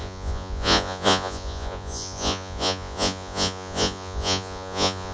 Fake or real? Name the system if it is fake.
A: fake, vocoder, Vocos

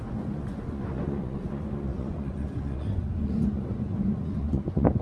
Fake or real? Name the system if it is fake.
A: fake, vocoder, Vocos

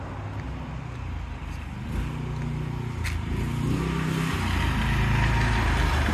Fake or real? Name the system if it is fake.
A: real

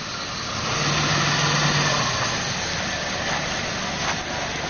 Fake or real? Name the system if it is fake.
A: real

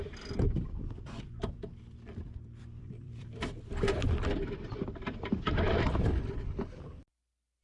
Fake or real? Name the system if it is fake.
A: fake, vocoder, BigVGAN v2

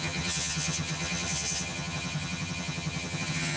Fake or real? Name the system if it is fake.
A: fake, vocoder, HiFi-GAN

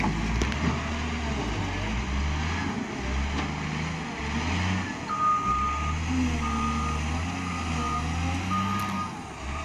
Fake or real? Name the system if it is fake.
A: real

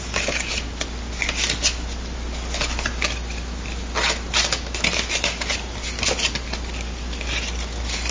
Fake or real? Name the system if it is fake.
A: real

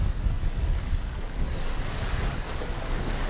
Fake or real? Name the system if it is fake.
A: fake, codec, DAC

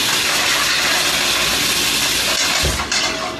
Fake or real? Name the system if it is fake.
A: real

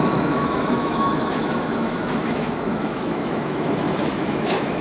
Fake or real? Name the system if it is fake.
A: fake, autoencoder, DAC-VAE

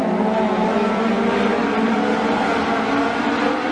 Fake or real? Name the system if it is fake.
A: real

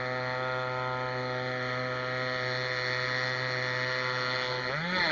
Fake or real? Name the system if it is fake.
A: real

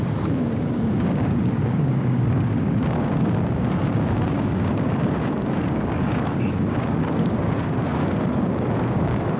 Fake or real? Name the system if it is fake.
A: fake, codec, DAC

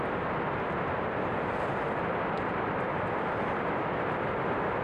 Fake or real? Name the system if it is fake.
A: real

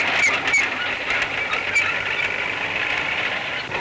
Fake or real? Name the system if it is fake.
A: real